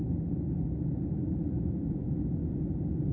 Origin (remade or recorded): recorded